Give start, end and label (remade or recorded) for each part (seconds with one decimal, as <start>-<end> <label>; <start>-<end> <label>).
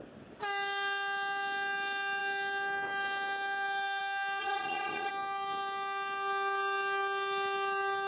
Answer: 0.0-4.4 recorded; 4.4-5.1 remade; 5.1-8.1 recorded